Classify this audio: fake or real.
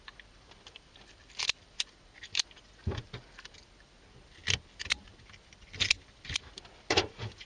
real